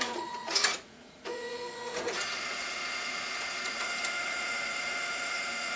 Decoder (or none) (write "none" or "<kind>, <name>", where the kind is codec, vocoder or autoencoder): vocoder, Vocos